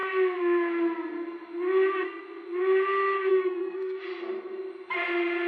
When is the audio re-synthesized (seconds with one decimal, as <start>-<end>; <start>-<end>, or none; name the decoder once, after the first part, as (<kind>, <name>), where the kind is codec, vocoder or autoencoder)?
3.3-4.0 (codec, SNAC)